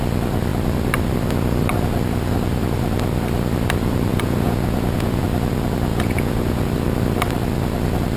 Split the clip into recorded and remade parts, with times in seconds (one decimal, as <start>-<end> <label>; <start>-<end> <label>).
0.0-4.1 recorded; 4.1-5.2 remade; 5.2-5.9 recorded; 5.9-6.7 remade; 6.7-8.2 recorded